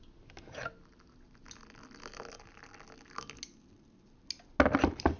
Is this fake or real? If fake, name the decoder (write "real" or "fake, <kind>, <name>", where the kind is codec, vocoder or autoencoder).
real